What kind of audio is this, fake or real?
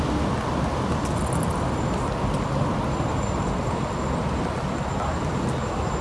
real